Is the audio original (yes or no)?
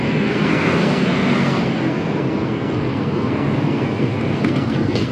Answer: no